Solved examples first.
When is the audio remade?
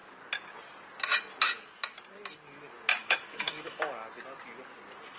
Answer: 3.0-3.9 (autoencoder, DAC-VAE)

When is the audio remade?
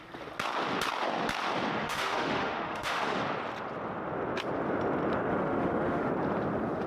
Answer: 1.8-3.2 (autoencoder, DAC-VAE); 5.3-6.1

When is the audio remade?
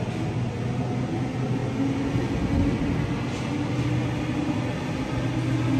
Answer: none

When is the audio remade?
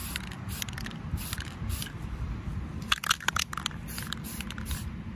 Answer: none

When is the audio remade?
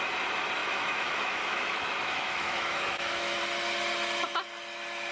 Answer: 0.6-3.4 (autoencoder, DAC-VAE)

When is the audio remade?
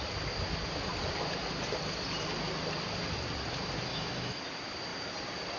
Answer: 3.9-4.4 (autoencoder, DAC-VAE)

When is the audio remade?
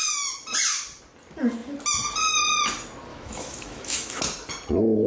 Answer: 3.1-4.2 (autoencoder, DAC-VAE)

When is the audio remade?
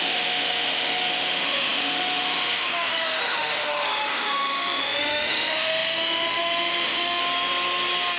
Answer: 0.0-7.2 (autoencoder, DAC-VAE)